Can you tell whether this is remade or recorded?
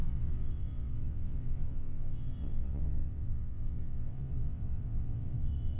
remade